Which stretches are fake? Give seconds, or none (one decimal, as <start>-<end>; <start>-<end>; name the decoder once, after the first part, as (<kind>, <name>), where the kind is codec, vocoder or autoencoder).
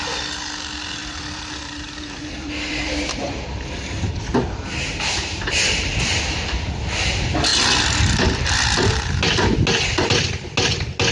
1.0-6.2 (vocoder, BigVGAN v2)